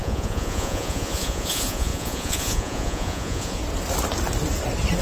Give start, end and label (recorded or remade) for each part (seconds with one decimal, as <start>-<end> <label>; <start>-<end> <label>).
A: 0.0-3.6 remade; 3.6-5.0 recorded